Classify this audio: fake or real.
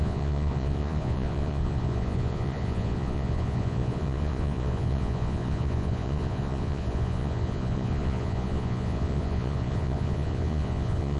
fake